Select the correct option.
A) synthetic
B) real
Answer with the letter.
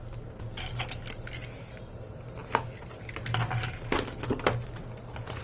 B